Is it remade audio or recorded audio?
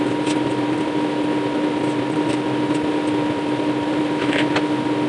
recorded